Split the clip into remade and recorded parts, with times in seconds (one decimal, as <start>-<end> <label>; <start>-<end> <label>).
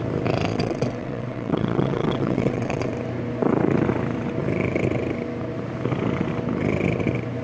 0.0-0.5 recorded; 0.5-2.9 remade; 2.9-7.4 recorded